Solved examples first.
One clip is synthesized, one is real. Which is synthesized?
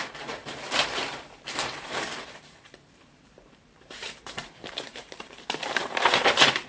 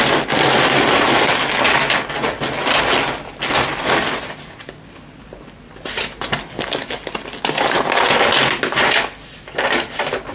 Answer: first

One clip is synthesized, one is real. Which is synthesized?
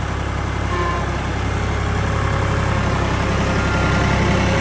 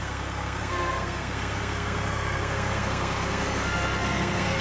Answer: second